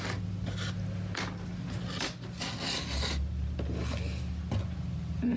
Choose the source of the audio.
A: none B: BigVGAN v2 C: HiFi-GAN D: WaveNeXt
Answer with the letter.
A